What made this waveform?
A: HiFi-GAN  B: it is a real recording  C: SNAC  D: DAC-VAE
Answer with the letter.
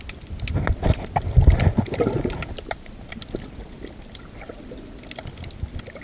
B